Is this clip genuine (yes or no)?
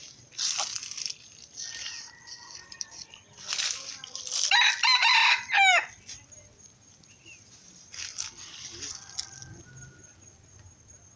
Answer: yes